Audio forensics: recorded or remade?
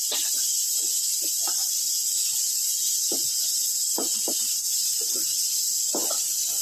recorded